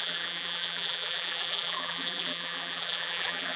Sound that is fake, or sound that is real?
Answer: fake